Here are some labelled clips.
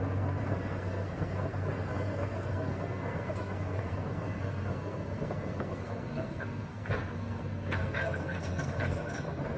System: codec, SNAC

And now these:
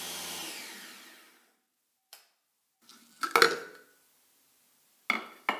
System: none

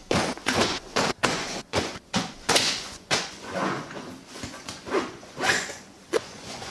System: vocoder, Vocos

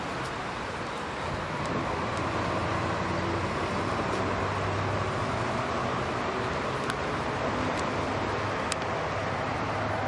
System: none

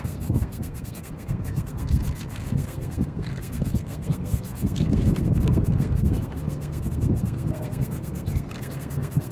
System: codec, SNAC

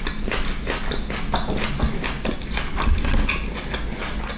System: none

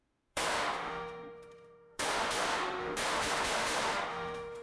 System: autoencoder, DAC-VAE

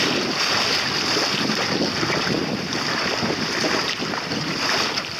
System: none